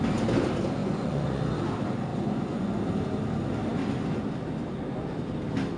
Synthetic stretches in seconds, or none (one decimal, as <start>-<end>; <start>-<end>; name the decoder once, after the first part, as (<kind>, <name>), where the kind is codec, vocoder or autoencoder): 0.8-1.4 (vocoder, Vocos); 2.1-2.8